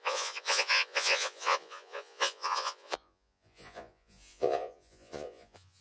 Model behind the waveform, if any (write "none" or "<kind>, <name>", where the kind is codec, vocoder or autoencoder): vocoder, Vocos